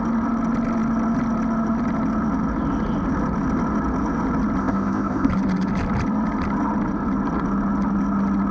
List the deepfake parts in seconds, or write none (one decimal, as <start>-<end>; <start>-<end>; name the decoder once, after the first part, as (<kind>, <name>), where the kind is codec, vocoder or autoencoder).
4.6-5.3 (codec, ZipCodec)